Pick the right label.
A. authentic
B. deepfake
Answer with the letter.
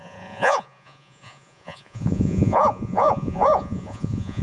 B